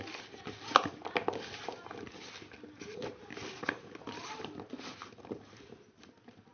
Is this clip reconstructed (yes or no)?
no